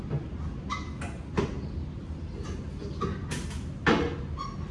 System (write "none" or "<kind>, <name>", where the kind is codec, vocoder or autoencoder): none